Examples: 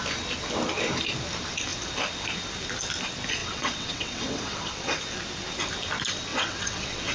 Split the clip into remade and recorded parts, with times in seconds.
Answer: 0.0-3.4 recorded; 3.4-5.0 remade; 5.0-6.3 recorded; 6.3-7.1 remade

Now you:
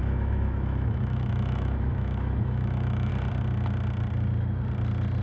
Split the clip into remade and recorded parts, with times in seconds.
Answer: 0.0-3.1 remade; 3.1-5.2 recorded

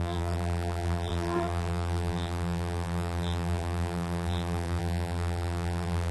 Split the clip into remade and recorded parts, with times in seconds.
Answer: 0.0-6.1 remade

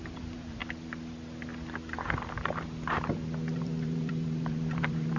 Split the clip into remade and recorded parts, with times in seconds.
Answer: 0.0-0.6 remade; 0.6-3.5 recorded; 3.5-5.2 remade

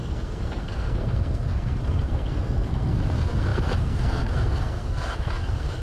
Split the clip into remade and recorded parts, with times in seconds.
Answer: 0.0-5.8 remade

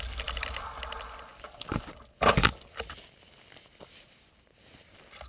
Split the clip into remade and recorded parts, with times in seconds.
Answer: 0.0-5.3 recorded

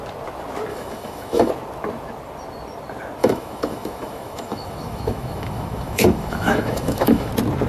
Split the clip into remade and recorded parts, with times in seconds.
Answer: 0.0-0.7 recorded; 0.7-1.5 remade; 1.5-3.2 recorded; 3.2-7.3 remade; 7.3-7.7 recorded